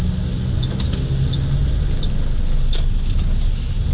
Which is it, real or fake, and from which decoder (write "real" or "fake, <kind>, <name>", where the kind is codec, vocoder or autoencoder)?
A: real